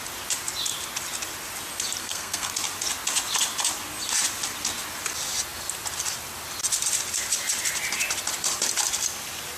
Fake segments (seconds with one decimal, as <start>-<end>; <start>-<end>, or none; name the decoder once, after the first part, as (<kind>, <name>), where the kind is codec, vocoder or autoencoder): 2.0-2.5 (codec, SNAC)